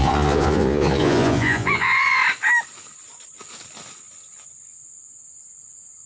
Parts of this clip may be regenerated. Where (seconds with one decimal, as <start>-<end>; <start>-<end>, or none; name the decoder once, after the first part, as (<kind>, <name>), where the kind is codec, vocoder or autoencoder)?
0.0-2.2 (vocoder, Vocos)